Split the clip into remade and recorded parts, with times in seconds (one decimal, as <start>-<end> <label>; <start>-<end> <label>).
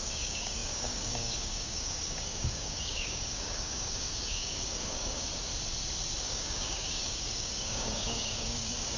0.0-5.5 remade; 5.5-6.2 recorded; 6.2-9.0 remade